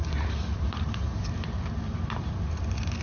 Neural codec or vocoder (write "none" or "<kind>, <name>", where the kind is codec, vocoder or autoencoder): vocoder, BigVGAN v2